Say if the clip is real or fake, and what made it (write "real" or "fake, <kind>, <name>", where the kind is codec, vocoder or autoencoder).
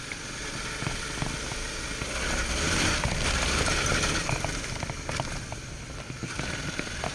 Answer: real